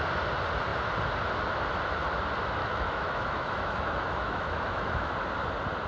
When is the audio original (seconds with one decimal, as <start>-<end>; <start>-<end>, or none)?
0.0-2.6; 5.1-5.9